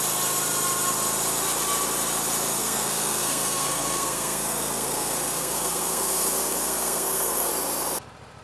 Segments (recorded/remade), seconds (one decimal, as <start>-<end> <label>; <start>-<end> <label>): 0.0-2.6 recorded; 2.6-7.5 remade; 7.5-8.4 recorded